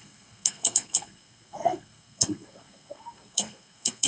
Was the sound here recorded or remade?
remade